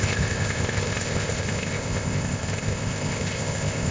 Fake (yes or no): yes